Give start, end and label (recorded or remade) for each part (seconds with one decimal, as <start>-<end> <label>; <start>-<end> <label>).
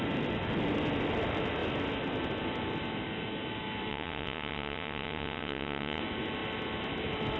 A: 0.0-3.9 recorded; 3.9-6.0 remade; 6.0-7.4 recorded